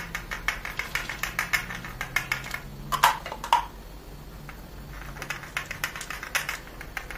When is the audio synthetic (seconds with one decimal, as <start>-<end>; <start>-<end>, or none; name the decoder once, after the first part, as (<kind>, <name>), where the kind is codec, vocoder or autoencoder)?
none

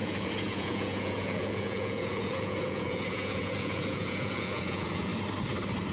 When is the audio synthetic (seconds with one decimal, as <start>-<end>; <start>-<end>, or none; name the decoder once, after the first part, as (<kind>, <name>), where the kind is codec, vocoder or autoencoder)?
0.0-5.1 (vocoder, Vocos)

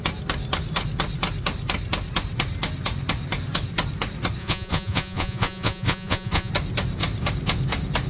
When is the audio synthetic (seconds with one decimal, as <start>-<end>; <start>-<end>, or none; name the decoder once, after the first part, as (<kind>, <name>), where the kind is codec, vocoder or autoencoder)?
4.4-6.5 (vocoder, Vocos)